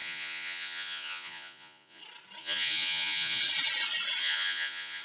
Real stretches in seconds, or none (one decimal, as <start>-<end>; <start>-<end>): 2.0-2.4; 3.4-4.2